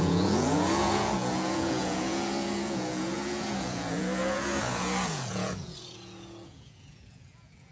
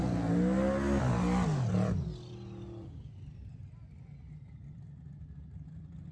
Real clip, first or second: second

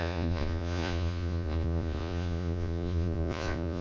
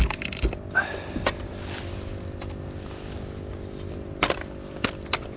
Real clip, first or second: second